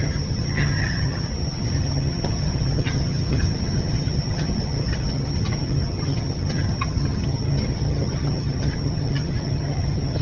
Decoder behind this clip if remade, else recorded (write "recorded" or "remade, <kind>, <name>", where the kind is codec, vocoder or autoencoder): remade, vocoder, HiFi-GAN